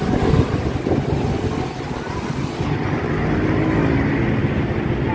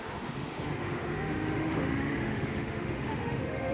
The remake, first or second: second